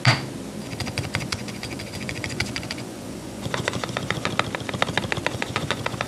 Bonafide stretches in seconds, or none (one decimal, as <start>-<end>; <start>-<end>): 0.0-0.6; 4.3-5.3